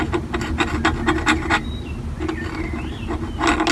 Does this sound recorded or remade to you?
recorded